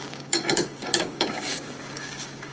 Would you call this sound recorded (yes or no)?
no